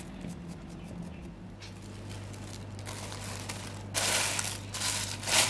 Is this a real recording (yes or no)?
yes